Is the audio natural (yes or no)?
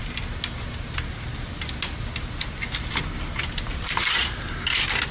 yes